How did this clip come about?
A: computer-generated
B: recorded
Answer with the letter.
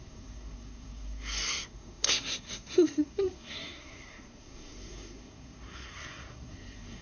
A